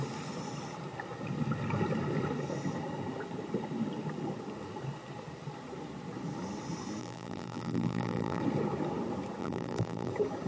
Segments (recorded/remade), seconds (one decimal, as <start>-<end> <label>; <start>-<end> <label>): 0.0-7.0 recorded; 7.0-8.4 remade; 8.4-9.4 recorded; 9.4-10.1 remade; 10.1-10.5 recorded